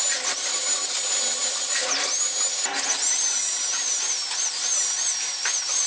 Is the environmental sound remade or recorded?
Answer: recorded